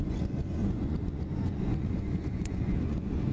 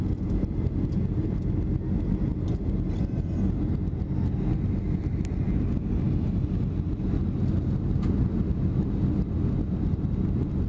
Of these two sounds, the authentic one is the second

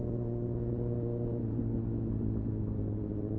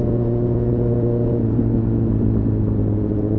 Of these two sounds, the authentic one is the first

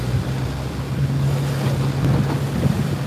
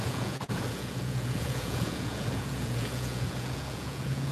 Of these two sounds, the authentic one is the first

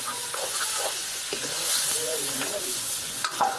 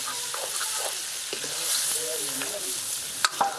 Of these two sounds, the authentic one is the second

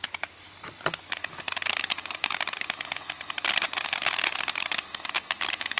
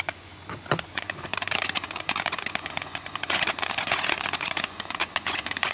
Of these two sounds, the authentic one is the first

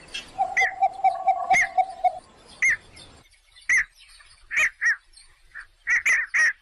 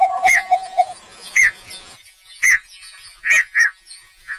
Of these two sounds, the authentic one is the first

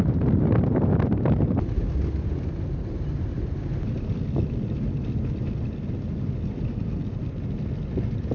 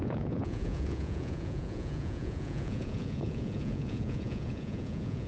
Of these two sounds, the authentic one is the first